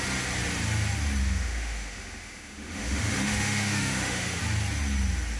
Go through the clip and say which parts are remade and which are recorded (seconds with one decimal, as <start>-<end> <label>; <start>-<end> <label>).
0.0-1.2 recorded; 1.2-4.4 remade; 4.4-5.4 recorded